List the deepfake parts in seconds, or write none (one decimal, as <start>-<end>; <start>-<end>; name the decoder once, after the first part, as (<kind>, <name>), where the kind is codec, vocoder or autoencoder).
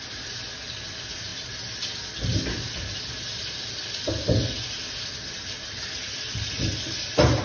none